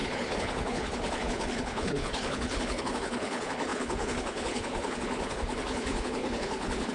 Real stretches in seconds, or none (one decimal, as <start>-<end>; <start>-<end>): none